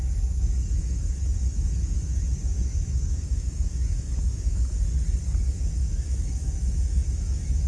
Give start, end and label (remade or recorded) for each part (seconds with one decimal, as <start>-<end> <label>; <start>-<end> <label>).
0.0-4.6 remade; 4.6-5.5 recorded; 5.5-7.7 remade